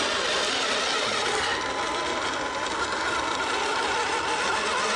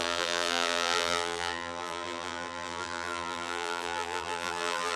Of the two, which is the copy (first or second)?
second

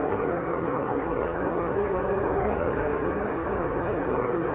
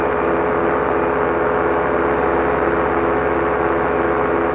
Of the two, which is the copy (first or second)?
first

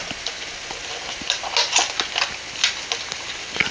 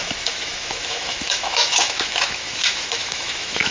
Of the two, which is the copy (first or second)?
second